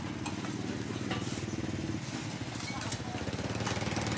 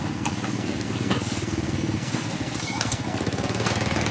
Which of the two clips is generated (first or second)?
second